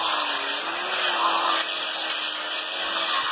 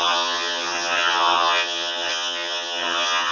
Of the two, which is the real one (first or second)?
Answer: first